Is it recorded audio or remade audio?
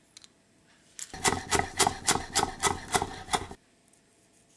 recorded